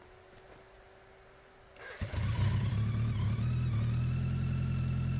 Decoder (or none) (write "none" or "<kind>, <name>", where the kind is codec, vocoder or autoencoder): none